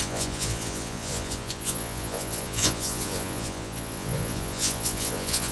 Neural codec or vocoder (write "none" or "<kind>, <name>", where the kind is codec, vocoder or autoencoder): vocoder, Vocos